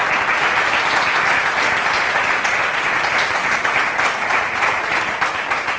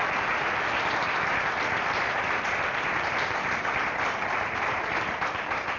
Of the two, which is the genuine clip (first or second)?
first